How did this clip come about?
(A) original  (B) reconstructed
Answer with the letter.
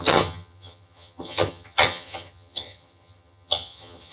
B